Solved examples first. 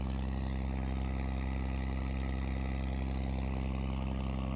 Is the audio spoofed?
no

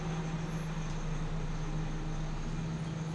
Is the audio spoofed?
no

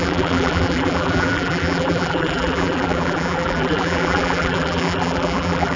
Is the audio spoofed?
yes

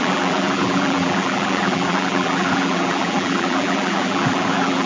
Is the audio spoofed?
yes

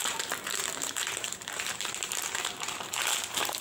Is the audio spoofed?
yes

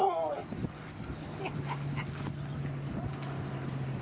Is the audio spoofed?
no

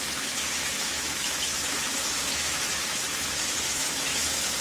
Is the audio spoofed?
yes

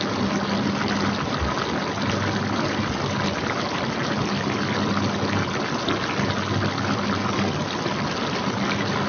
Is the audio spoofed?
no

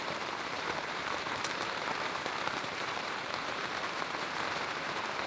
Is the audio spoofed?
yes